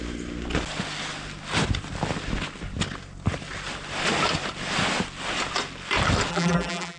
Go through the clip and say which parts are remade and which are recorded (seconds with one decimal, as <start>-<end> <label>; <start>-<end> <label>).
0.0-6.3 recorded; 6.3-7.0 remade